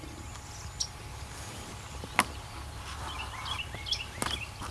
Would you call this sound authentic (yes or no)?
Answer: yes